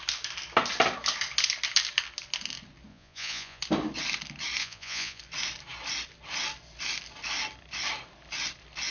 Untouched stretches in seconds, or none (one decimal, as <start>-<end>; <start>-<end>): 0.0-2.9; 3.6-4.6; 5.2-8.9